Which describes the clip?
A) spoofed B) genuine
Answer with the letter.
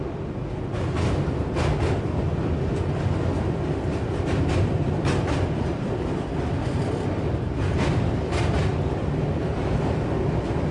B